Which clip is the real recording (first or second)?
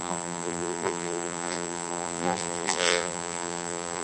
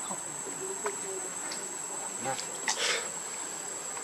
second